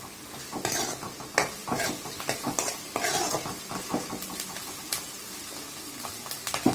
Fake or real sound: real